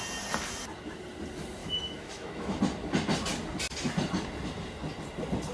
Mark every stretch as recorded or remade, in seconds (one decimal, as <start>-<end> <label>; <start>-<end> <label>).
0.0-1.6 recorded; 1.6-2.6 remade; 2.6-5.5 recorded